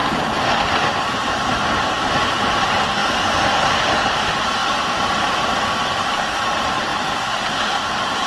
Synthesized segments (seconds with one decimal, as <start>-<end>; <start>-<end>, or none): 1.0-3.0; 3.5-4.6; 6.1-6.9; 7.4-8.3